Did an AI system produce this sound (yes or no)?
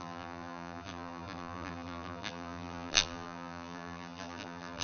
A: yes